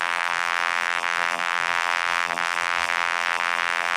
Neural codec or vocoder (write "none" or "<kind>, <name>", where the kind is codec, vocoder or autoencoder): vocoder, BigVGAN v2